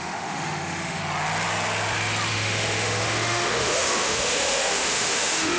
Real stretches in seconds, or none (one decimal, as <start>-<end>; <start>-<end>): 1.0-2.3